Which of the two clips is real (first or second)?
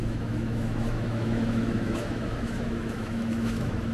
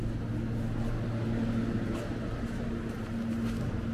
second